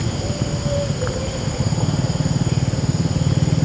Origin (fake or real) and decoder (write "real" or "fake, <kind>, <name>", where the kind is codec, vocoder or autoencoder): real